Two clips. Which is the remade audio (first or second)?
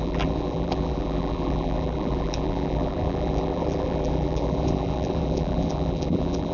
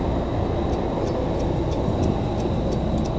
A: first